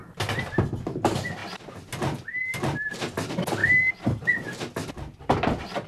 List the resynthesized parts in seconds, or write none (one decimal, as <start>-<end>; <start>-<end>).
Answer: none